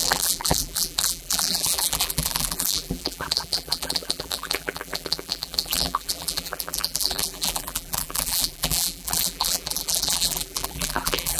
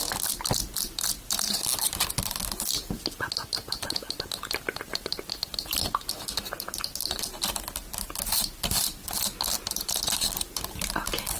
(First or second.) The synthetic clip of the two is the first